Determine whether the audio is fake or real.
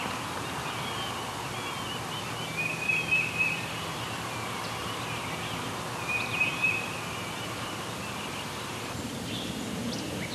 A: real